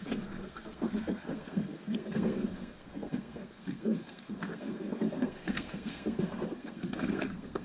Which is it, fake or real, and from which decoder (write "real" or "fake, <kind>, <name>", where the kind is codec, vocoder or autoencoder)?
fake, codec, SNAC